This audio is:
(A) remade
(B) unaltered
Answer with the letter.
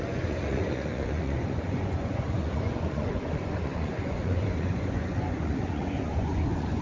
A